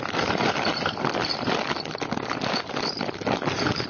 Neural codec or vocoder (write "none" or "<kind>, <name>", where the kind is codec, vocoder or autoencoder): none